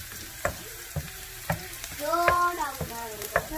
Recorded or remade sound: remade